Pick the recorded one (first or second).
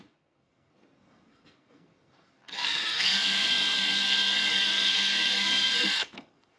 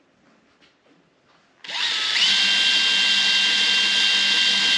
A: second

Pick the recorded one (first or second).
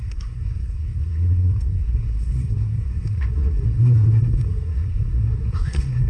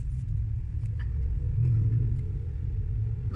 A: second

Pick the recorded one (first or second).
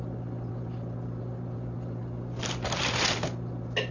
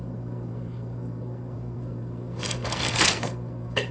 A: first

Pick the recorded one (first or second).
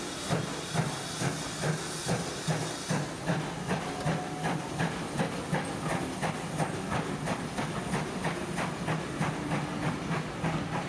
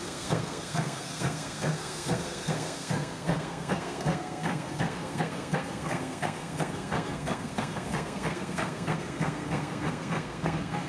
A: first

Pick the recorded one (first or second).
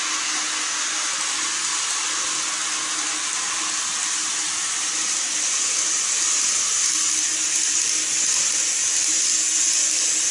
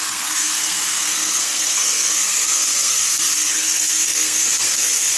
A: first